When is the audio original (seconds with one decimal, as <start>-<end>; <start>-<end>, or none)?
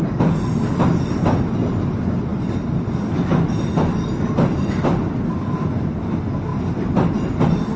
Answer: 0.0-7.8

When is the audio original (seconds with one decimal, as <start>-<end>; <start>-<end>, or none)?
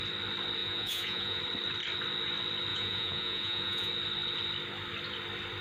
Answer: 0.0-0.6; 1.4-2.7; 3.9-5.6